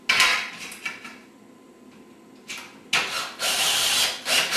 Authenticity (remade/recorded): recorded